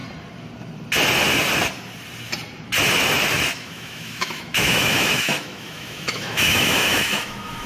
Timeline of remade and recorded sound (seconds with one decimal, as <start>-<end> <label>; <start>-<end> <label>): 0.0-3.3 recorded; 3.3-7.7 remade